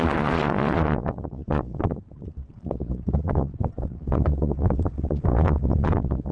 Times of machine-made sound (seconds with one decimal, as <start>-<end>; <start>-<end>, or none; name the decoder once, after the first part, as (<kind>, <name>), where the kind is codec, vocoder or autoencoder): 0.0-6.3 (vocoder, Vocos)